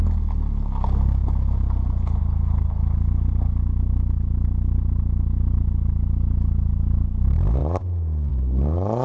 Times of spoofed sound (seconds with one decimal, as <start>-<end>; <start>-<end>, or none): 1.2-2.2